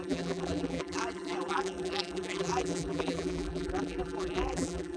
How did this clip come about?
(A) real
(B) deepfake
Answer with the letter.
B